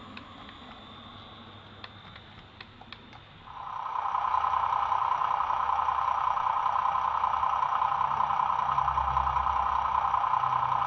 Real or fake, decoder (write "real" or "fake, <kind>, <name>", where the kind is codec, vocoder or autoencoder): real